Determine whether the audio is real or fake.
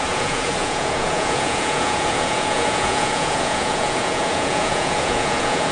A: fake